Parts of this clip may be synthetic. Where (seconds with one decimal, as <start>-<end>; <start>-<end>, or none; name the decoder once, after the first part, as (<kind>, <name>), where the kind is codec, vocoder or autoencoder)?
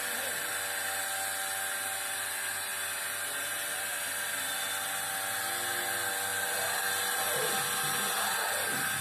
none